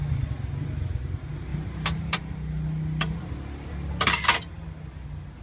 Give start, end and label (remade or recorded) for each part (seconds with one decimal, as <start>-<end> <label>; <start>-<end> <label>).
0.0-1.5 recorded; 1.5-2.2 remade; 2.2-5.4 recorded

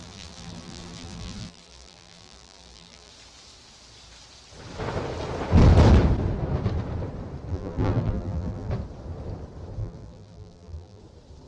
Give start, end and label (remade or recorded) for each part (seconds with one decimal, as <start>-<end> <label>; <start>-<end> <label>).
0.0-3.1 remade; 3.1-7.5 recorded; 7.5-8.7 remade; 8.7-9.8 recorded; 9.8-11.0 remade; 11.0-11.5 recorded

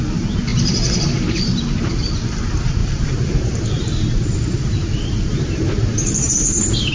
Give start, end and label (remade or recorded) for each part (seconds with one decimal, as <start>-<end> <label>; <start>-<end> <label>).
0.0-2.8 recorded; 2.8-6.9 remade